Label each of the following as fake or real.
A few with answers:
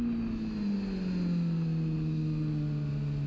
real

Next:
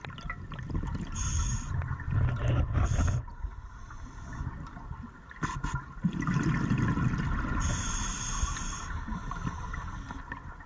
real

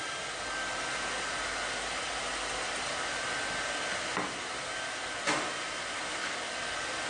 real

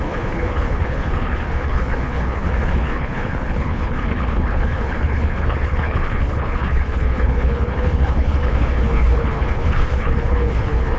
fake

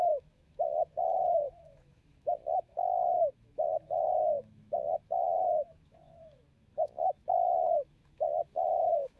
fake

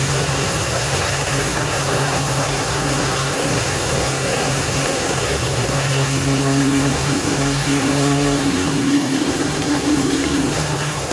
fake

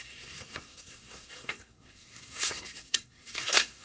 fake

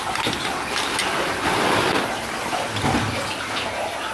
real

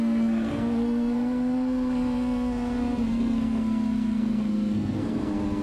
fake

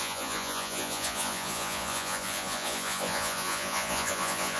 fake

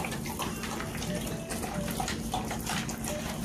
real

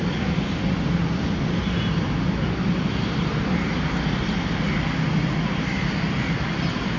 real